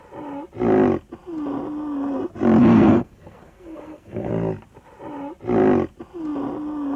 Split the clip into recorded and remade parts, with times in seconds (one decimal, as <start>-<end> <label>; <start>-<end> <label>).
0.0-2.6 recorded; 2.6-4.3 remade; 4.3-7.0 recorded

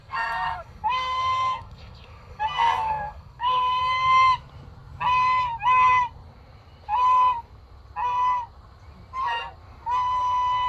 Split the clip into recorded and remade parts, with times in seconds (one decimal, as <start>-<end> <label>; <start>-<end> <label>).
0.0-3.8 remade; 3.8-10.7 recorded

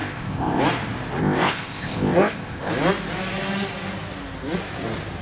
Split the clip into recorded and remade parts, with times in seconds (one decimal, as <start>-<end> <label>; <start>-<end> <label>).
0.0-0.6 remade; 0.6-1.2 recorded; 1.2-2.7 remade; 2.7-5.2 recorded

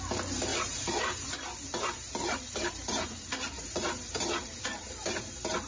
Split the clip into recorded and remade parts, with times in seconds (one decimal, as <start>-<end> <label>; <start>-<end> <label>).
0.0-0.5 recorded; 0.5-3.9 remade; 3.9-4.5 recorded; 4.5-5.7 remade

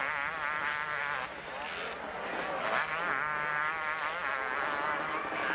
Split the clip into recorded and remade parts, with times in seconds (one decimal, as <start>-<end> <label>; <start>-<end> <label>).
0.0-5.5 recorded

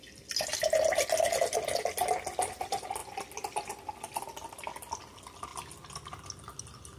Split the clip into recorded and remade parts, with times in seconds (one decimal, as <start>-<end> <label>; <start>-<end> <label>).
0.0-7.0 recorded

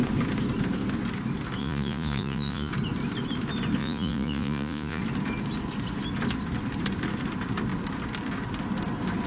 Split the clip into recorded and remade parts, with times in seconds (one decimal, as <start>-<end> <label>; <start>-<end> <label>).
0.0-1.6 recorded; 1.6-2.7 remade; 2.7-3.8 recorded; 3.8-5.0 remade; 5.0-9.3 recorded